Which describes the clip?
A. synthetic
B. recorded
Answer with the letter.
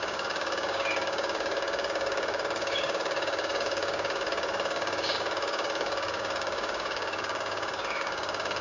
A